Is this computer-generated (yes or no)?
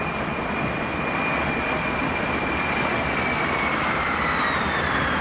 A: no